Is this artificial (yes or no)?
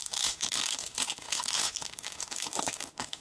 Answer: yes